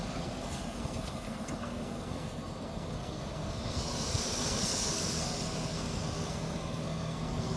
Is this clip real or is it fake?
fake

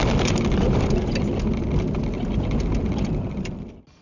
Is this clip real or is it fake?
real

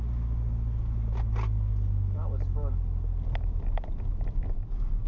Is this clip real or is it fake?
real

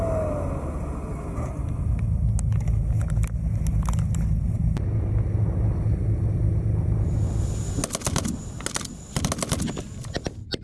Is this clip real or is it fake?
real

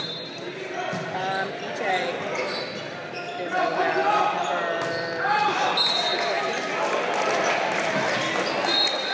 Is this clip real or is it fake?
real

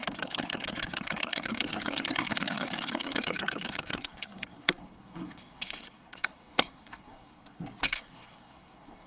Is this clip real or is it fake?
fake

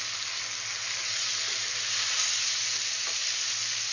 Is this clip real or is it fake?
real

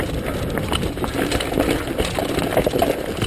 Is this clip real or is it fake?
real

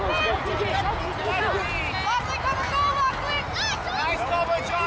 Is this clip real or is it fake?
real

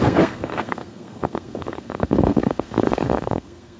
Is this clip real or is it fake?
fake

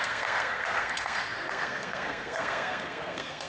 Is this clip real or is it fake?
fake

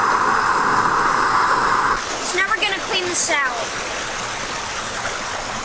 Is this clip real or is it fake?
real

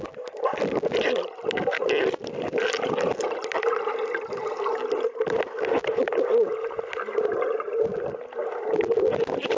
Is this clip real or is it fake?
real